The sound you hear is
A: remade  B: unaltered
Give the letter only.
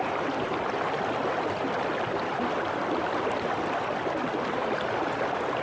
B